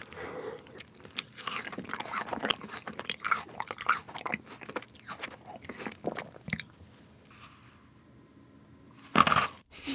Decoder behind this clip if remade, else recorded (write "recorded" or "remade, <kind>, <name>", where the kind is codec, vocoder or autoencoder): recorded